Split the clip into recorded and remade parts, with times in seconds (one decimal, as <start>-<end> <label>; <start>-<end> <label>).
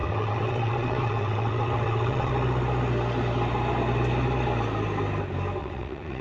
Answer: 0.0-2.3 remade; 2.3-5.6 recorded; 5.6-6.2 remade